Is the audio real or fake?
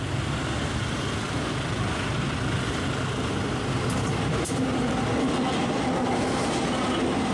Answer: real